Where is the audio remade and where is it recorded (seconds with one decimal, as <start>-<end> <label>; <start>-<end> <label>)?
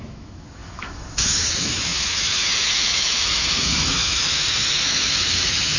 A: 0.0-5.8 remade